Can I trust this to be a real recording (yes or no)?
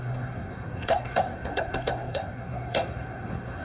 no